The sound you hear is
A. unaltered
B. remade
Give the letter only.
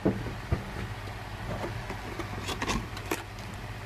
A